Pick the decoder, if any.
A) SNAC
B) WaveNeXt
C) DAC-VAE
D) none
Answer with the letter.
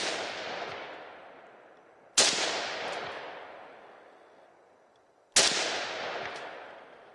D